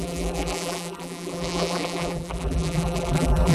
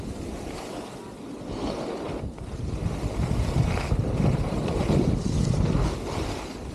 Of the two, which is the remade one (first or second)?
first